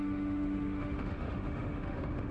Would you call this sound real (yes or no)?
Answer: no